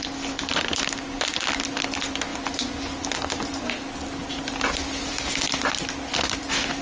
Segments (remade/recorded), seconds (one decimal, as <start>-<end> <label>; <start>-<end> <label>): 0.0-6.8 recorded